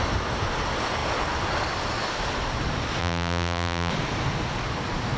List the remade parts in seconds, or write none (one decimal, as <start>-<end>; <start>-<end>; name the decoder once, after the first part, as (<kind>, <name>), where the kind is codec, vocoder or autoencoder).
3.0-3.9 (vocoder, BigVGAN v2)